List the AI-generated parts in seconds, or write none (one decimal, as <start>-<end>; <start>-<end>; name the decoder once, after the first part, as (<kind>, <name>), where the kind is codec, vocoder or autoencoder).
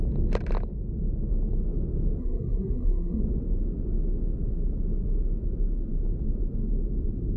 2.2-3.2 (codec, SNAC)